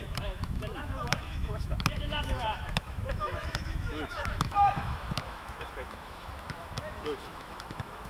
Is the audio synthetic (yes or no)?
yes